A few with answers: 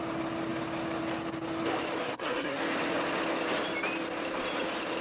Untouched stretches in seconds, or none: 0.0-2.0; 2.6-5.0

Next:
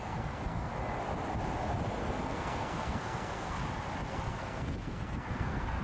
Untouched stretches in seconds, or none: 0.7-2.0; 3.6-4.1

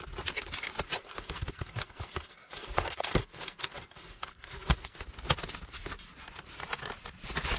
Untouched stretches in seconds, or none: 0.0-1.0; 5.0-7.6

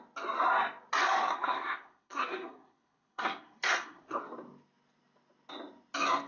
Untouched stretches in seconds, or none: 0.0-1.3; 4.2-6.3

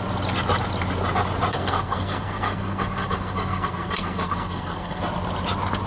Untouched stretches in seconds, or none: 0.0-1.5; 5.0-5.9

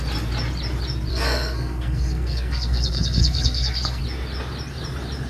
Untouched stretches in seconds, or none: 0.0-1.1; 4.0-5.3

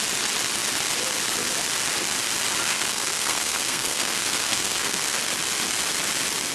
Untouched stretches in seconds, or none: 0.0-2.7; 5.2-6.5

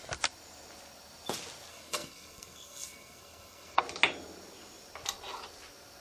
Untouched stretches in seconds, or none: 0.0-1.7; 3.8-6.0